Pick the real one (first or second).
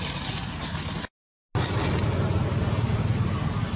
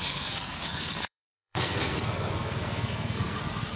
first